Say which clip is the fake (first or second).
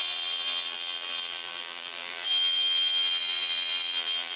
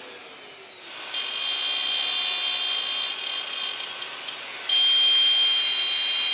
first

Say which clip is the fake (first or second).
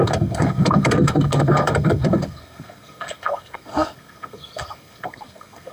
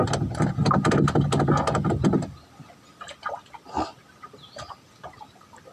first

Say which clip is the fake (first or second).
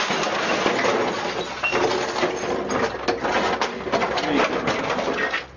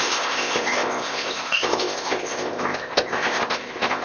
second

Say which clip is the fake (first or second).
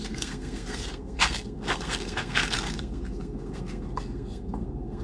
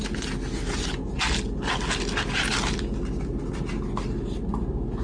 first